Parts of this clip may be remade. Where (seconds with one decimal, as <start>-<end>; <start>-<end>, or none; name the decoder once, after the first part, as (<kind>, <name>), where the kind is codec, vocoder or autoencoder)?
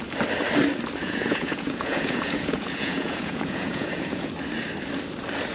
1.0-4.3 (vocoder, Vocos)